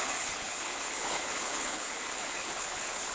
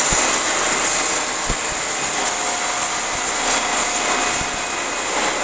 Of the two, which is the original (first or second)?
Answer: second